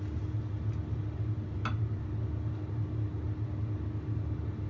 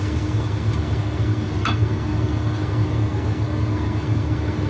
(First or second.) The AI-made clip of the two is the second